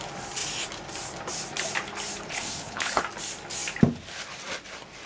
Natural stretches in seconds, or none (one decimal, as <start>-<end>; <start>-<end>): 0.0-2.3; 3.0-5.1